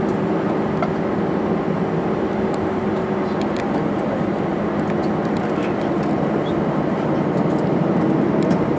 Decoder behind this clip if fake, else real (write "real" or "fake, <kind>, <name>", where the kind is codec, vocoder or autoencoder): real